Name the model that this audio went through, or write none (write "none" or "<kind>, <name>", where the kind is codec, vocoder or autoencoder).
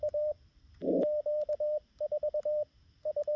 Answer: vocoder, BigVGAN v2